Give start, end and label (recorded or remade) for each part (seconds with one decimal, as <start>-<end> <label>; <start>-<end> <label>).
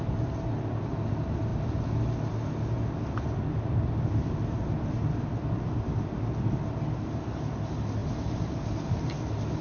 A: 0.0-9.6 recorded